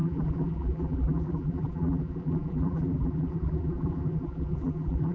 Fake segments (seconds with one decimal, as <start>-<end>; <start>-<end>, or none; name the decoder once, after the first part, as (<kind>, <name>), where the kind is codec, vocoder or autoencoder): 0.0-5.1 (vocoder, BigVGAN v2)